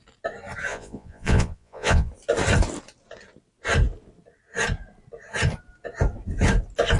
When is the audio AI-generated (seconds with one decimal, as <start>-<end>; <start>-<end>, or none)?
0.7-2.1